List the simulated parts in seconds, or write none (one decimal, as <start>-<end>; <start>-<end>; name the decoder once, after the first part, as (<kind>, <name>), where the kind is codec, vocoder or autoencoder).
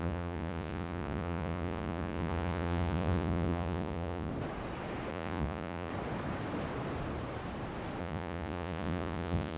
0.0-4.3 (vocoder, Vocos); 5.1-5.9; 8.0-9.6